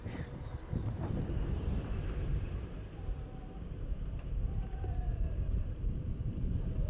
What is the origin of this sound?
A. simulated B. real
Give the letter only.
A